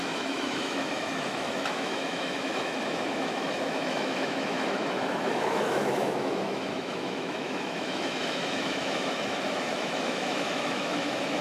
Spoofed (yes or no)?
yes